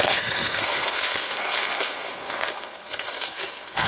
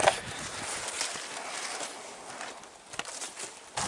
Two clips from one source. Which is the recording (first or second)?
second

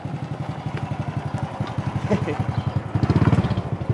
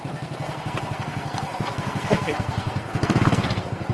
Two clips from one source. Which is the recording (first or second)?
first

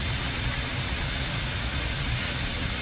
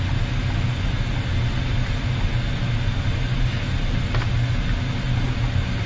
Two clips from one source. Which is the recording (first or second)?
second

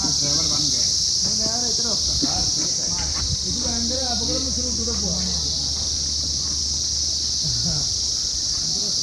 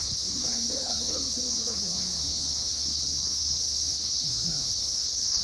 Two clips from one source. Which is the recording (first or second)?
first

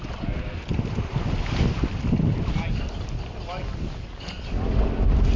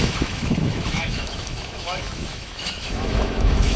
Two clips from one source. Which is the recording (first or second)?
first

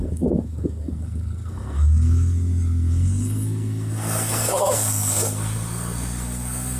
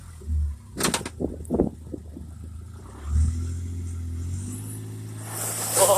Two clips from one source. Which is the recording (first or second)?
second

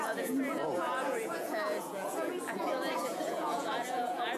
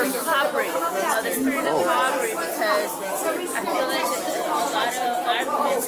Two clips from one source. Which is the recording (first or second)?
second